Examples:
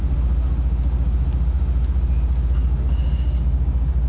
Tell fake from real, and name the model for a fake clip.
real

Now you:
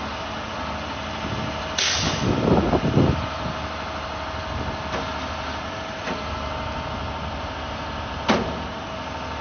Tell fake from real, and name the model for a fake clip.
real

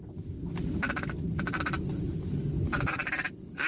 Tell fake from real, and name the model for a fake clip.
real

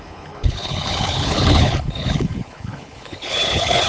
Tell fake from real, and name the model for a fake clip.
fake, codec, HILCodec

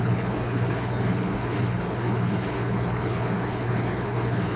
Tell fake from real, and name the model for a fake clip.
fake, codec, HILCodec